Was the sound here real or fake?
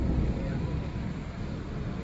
real